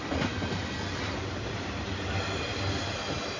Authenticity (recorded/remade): recorded